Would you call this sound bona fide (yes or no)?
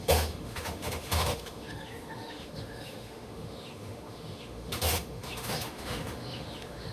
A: no